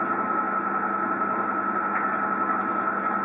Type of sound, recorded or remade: recorded